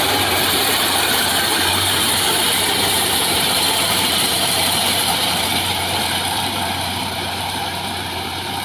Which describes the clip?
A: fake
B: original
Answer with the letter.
A